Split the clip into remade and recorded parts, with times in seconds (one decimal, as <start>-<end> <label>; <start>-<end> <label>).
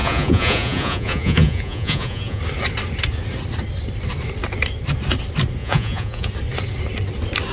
0.0-2.4 remade; 2.4-5.6 recorded; 5.6-6.3 remade; 6.3-7.5 recorded